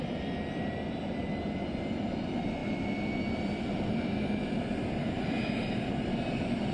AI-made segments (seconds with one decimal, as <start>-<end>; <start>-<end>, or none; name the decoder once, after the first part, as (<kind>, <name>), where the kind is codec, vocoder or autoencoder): none